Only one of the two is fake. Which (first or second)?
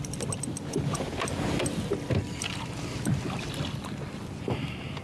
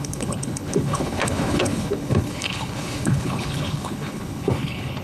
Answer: second